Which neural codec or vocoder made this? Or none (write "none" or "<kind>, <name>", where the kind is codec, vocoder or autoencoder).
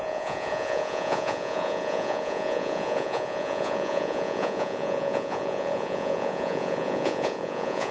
vocoder, Vocos